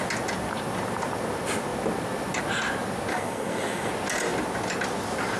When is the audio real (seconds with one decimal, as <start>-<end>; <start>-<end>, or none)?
0.0-3.1; 3.9-5.4